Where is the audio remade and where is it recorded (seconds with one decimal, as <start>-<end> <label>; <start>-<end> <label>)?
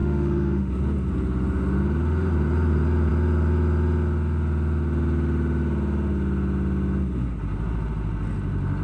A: 0.0-0.7 remade; 0.7-8.8 recorded